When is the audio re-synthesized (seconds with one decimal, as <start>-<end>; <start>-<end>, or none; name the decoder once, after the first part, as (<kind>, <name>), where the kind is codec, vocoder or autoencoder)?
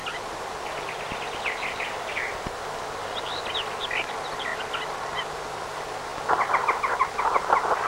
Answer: none